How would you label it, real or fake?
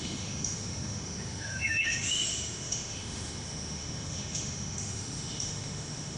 fake